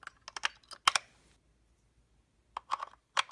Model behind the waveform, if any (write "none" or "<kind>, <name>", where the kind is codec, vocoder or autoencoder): none